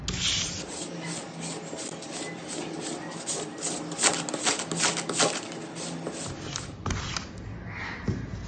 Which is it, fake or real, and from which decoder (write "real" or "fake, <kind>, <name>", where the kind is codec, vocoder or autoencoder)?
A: real